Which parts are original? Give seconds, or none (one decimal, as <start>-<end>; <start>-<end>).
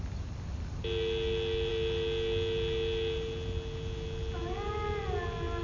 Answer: 0.0-5.6